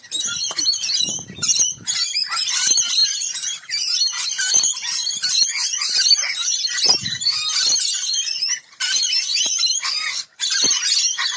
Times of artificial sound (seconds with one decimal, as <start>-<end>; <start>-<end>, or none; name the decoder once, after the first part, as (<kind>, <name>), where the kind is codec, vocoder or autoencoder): 0.0-11.4 (vocoder, BigVGAN v2)